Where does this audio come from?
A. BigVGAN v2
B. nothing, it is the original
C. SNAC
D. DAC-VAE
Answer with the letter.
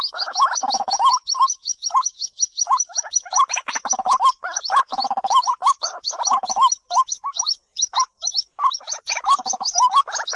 D